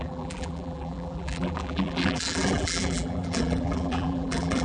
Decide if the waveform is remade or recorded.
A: remade